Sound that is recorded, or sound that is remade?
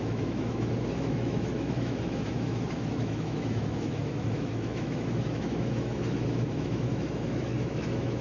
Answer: remade